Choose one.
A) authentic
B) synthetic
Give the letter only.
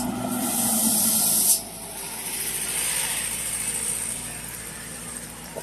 B